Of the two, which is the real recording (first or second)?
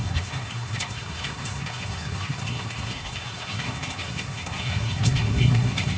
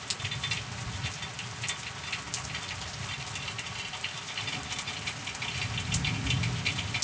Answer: second